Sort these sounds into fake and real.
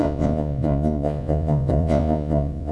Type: fake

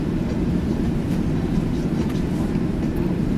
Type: fake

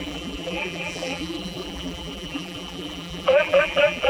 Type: fake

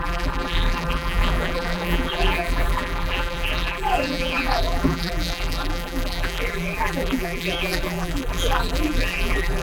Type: fake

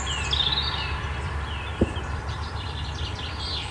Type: real